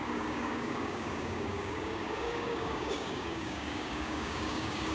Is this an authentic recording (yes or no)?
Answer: no